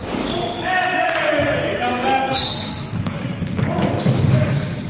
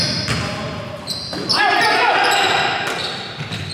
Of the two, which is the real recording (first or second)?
second